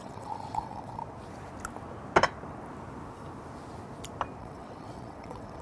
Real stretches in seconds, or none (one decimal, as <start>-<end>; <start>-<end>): 1.0-4.4